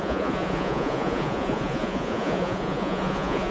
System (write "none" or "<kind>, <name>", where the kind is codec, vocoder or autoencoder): vocoder, Vocos